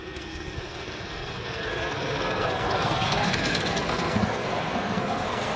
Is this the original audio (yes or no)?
no